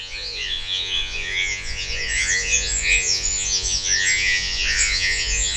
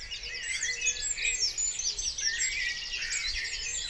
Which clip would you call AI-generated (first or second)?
first